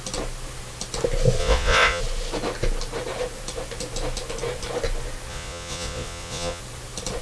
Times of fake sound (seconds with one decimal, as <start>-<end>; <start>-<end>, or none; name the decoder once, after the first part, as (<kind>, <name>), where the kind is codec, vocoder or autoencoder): 1.4-2.0 (vocoder, Vocos); 5.3-6.6